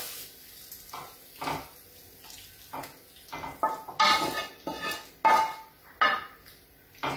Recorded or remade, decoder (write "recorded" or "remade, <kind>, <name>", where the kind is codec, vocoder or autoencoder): recorded